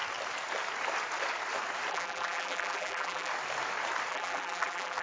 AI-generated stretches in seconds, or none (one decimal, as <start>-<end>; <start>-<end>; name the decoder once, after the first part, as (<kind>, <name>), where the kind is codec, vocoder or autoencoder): 1.9-3.3 (vocoder, BigVGAN v2); 4.1-5.0